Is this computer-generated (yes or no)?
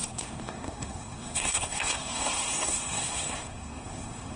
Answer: yes